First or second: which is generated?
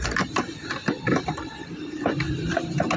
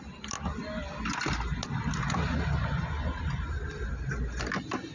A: first